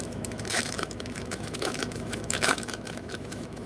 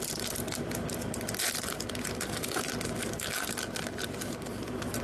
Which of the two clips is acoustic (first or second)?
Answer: second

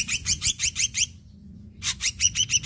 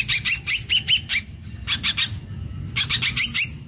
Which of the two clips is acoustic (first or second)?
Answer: second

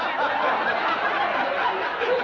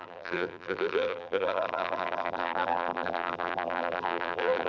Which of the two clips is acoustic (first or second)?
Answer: first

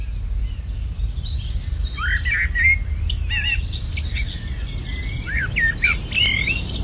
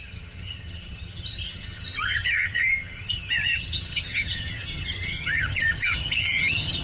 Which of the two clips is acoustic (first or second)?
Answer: first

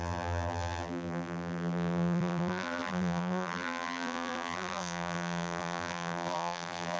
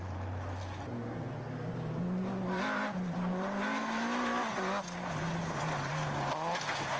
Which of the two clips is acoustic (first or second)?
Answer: second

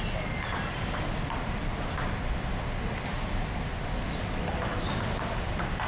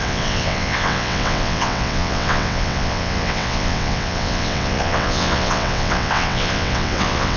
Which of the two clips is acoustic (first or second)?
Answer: first